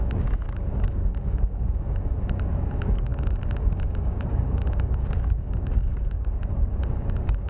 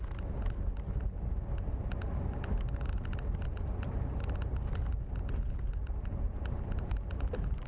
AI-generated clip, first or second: first